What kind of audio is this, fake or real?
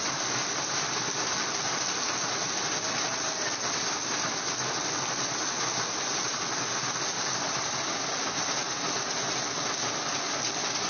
real